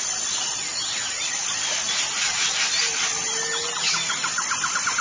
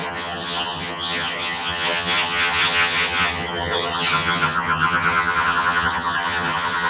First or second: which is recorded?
first